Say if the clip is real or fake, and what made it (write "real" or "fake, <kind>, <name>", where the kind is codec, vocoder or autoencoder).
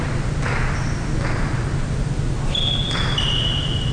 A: real